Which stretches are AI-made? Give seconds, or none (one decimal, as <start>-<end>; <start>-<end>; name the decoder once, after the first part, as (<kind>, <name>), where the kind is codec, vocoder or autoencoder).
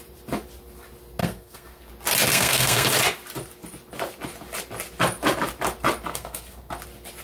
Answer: 1.2-1.9 (codec, SNAC); 2.3-2.9; 6.1-6.7